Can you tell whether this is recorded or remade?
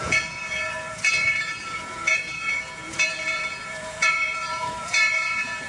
remade